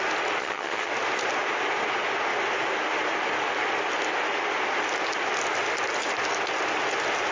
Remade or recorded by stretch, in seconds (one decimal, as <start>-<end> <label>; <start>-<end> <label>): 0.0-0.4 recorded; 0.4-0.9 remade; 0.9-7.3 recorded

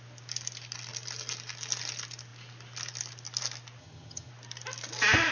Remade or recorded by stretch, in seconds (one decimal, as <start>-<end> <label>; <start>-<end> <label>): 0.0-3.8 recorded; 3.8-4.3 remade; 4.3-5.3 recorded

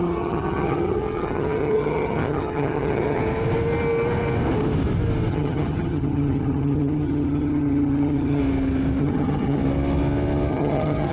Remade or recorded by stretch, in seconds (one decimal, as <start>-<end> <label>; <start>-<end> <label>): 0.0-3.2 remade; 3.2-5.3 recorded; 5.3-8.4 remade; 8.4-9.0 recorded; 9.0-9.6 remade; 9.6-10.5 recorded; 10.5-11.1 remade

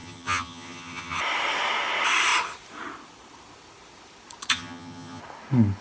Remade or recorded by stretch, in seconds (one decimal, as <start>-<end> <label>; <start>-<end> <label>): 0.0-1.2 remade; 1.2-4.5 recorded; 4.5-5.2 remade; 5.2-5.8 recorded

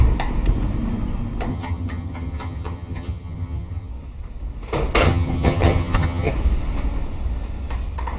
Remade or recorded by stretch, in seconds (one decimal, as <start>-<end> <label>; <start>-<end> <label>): 0.0-1.5 recorded; 1.5-3.9 remade; 3.9-5.0 recorded; 5.0-6.3 remade; 6.3-8.2 recorded